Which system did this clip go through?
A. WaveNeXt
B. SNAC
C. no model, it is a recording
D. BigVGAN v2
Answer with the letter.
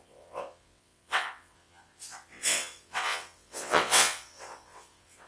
A